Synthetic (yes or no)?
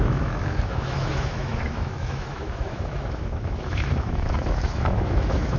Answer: yes